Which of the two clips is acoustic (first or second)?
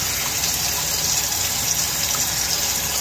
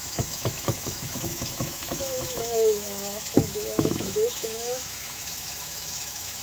first